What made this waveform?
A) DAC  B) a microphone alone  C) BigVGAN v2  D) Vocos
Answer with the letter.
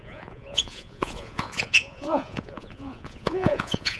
D